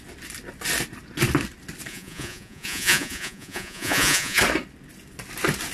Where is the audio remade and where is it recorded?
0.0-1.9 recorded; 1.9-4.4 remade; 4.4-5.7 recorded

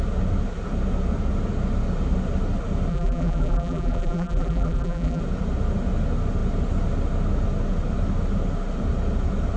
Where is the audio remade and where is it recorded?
0.0-2.9 recorded; 2.9-5.2 remade; 5.2-9.6 recorded

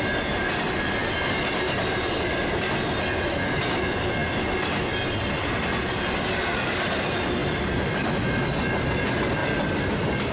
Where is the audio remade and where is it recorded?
0.0-10.3 recorded

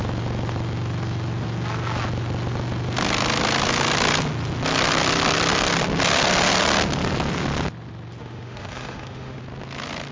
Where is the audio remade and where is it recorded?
0.0-8.2 recorded; 8.2-9.4 remade; 9.4-10.1 recorded